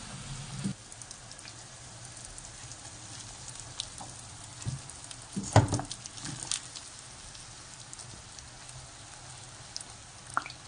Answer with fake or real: real